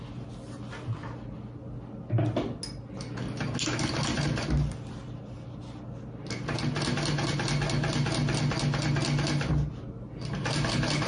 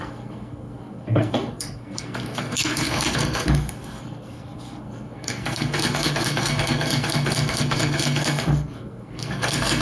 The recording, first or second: first